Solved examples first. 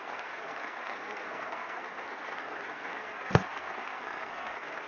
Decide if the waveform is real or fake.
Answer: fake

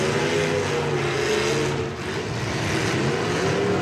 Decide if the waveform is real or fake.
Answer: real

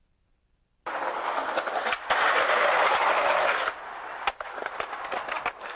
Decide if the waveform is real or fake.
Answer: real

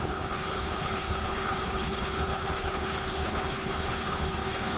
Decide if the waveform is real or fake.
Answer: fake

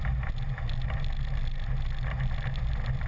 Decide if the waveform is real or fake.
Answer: real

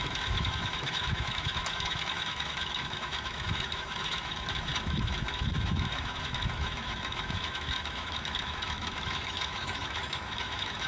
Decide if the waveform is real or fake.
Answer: fake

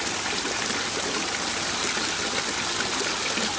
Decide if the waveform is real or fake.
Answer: real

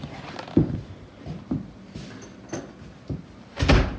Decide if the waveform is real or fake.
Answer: real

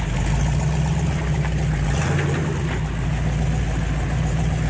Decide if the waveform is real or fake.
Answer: real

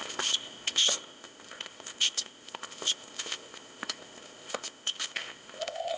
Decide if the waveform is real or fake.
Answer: fake